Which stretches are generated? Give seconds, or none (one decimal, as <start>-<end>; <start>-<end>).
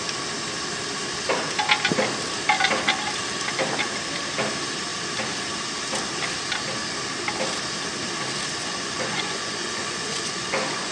8.6-10.9